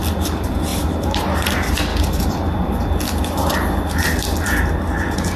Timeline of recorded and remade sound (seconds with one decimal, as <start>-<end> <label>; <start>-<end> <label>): 0.0-5.4 remade